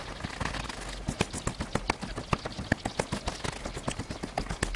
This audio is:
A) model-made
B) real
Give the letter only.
B